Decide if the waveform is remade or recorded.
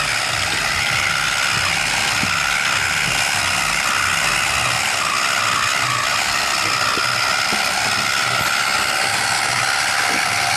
recorded